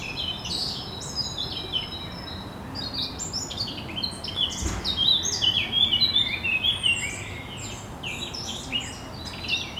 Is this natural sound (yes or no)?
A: yes